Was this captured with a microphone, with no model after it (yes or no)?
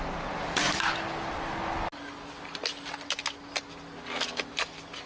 yes